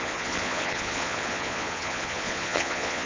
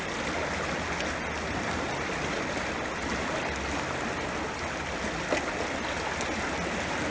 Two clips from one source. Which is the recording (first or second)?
second